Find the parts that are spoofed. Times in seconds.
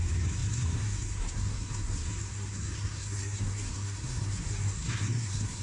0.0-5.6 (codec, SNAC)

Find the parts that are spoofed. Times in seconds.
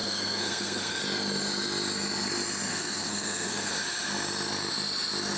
0.0-1.0 (codec, SNAC); 2.7-3.7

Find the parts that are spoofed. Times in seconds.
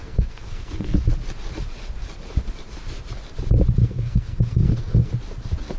0.0-0.9 (codec, SNAC); 3.8-5.1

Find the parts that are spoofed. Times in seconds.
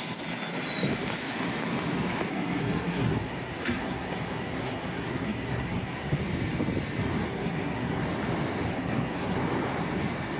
2.3-6.2 (codec, SNAC); 7.3-8.0; 8.7-9.4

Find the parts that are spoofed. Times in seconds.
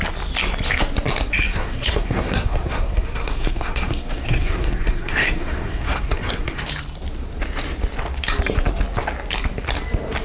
1.5-6.7 (codec, SNAC)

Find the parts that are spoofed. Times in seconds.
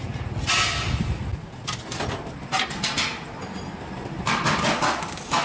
none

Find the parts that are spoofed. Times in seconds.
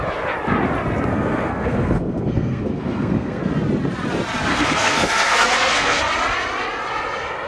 1.1-3.4 (codec, SNAC); 4.5-6.0